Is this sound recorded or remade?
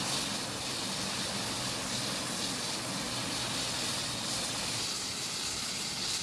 recorded